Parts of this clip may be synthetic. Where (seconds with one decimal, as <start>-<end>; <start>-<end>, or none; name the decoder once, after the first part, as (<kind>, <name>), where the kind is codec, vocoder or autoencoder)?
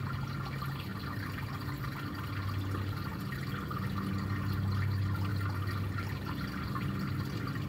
0.9-1.8 (vocoder, BigVGAN v2)